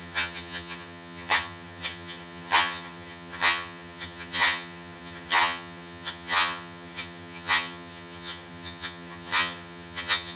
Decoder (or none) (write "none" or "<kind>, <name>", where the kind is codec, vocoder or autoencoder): vocoder, HiFi-GAN